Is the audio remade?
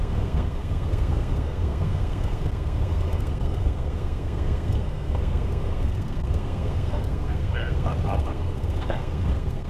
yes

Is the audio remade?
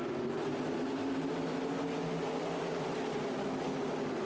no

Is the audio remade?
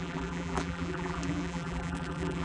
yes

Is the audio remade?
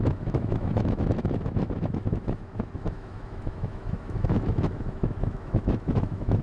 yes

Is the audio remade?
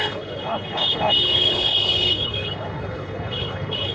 yes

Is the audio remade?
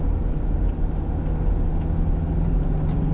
no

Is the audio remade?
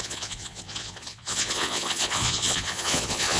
yes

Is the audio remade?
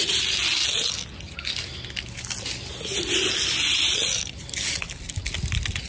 no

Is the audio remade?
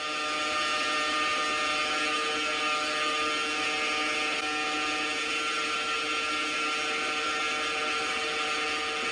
no